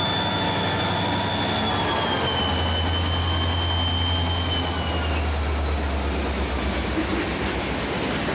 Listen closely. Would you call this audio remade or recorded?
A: recorded